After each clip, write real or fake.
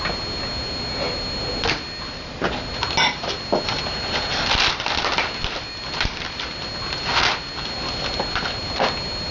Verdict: real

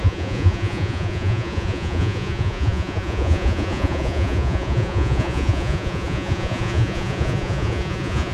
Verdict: fake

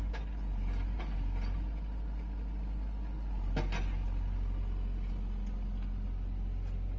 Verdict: real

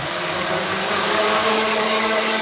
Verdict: fake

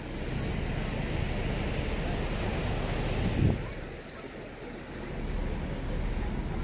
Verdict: real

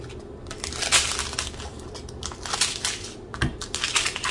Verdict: real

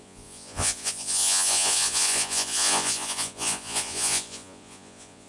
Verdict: fake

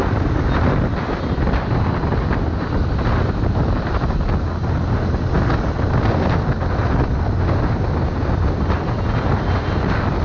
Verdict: real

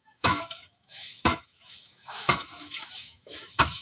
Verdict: fake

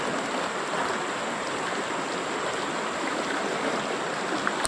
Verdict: real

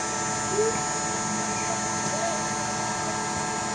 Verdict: real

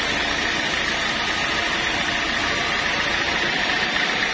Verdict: real